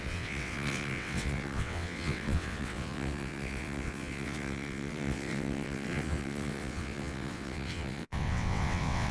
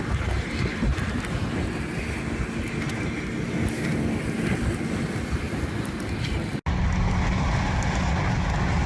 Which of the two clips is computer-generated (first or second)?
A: first